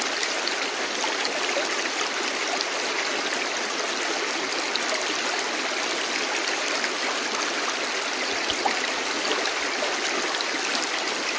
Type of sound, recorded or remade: recorded